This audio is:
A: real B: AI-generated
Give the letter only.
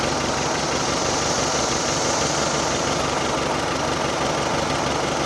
A